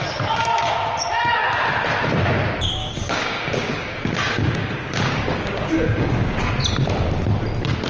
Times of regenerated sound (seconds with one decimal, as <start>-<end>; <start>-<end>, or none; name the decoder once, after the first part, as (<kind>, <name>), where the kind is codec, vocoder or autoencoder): 2.8-6.5 (codec, DAC)